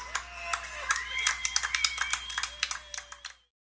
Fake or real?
real